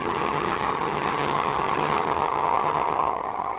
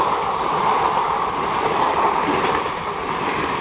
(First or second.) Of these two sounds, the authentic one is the second